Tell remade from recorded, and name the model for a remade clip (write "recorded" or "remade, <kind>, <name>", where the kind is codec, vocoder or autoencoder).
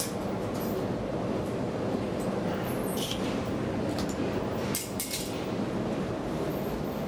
recorded